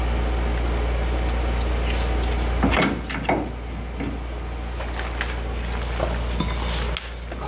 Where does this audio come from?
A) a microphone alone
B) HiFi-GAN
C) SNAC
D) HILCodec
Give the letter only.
A